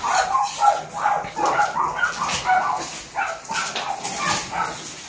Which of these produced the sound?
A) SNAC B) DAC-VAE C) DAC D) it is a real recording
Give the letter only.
D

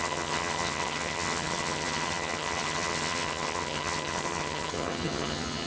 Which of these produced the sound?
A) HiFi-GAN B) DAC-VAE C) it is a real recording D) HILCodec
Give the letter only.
A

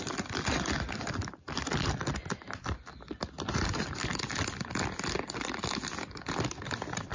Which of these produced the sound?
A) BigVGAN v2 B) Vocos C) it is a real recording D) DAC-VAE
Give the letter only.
C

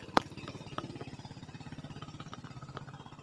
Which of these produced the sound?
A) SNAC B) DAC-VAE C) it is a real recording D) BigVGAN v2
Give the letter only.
D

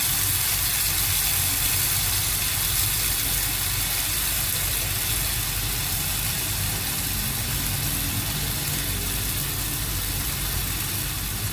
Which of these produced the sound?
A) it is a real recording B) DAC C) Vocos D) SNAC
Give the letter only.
A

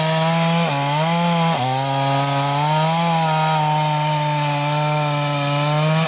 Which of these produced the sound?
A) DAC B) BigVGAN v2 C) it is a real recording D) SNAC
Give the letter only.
C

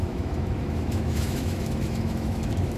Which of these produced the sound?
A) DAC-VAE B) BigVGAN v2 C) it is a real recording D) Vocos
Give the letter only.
A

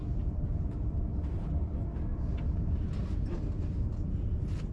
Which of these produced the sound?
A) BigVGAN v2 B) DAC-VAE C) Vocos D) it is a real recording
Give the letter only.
D